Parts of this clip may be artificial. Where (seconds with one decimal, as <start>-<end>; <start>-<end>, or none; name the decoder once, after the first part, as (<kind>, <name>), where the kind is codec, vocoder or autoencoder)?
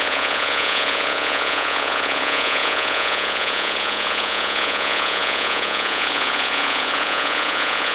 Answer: 0.0-7.9 (vocoder, Vocos)